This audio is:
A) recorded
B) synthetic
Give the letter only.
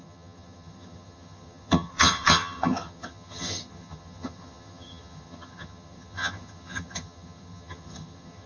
B